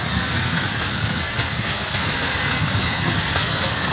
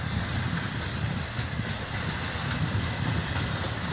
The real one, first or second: second